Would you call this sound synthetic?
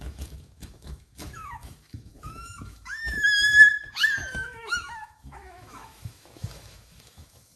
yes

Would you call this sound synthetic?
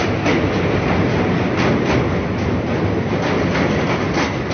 no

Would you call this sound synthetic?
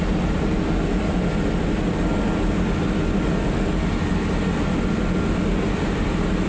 no